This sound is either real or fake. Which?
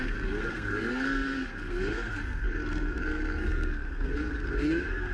fake